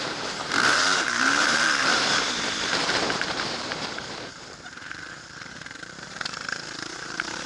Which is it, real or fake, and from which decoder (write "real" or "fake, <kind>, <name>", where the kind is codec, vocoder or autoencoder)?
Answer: fake, vocoder, BigVGAN v2